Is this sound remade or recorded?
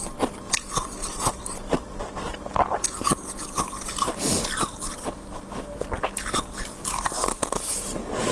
recorded